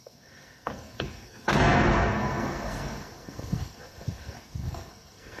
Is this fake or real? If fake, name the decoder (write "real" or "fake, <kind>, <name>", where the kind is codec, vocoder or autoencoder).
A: fake, codec, SNAC